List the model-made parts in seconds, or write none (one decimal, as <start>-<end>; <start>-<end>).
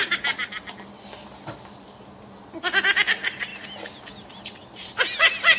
none